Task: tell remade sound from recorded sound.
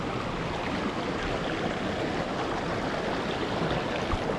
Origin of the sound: recorded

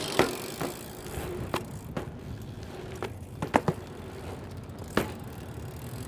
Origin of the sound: recorded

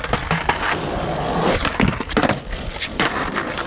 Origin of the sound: recorded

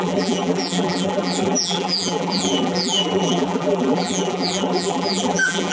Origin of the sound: remade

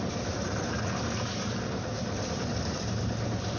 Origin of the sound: remade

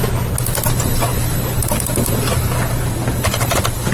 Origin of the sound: recorded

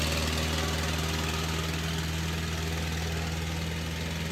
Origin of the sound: recorded